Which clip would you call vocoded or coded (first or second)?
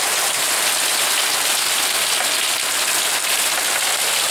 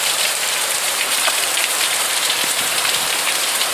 second